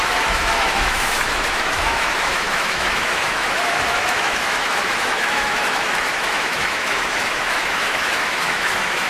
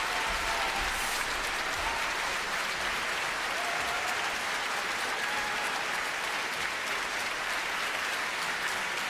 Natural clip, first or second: second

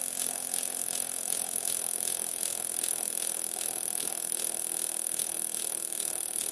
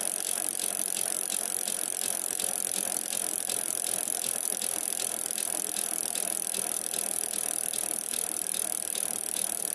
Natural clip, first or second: second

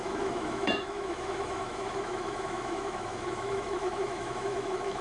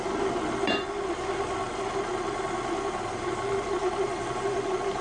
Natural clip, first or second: second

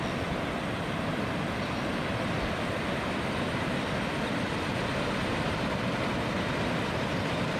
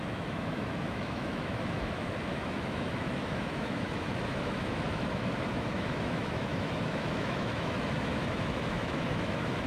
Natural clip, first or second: first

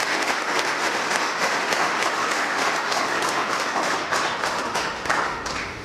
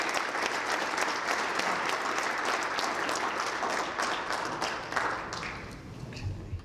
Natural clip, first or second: second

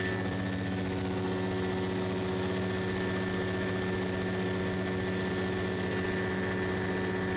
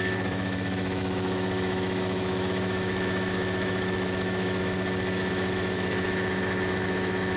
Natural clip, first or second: first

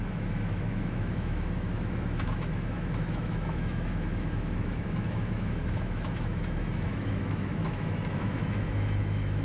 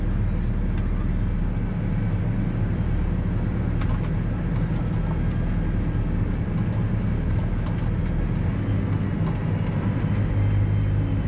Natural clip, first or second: second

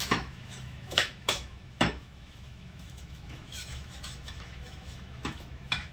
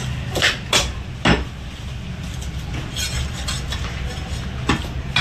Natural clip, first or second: second